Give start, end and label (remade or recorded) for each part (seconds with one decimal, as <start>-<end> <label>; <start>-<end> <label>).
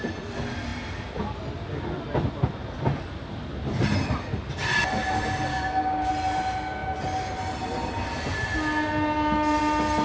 0.0-5.5 recorded; 5.5-6.1 remade; 6.1-10.0 recorded